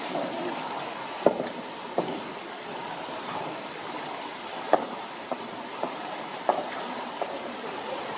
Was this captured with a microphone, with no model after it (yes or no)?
no